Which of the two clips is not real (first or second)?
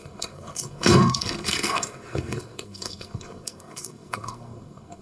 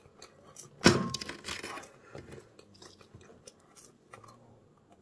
first